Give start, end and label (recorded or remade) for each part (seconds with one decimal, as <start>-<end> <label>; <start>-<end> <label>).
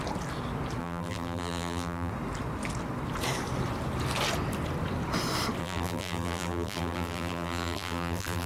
0.0-0.8 recorded; 0.8-2.1 remade; 2.1-5.6 recorded; 5.6-8.5 remade